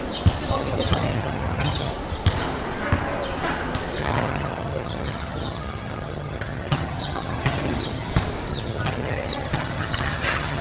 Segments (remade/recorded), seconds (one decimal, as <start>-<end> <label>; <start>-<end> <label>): 0.0-0.5 recorded; 0.5-1.9 remade; 1.9-4.0 recorded; 4.0-8.1 remade; 8.1-8.5 recorded; 8.5-10.6 remade